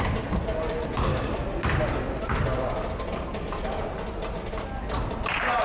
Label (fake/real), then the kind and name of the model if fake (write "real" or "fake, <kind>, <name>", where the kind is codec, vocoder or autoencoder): real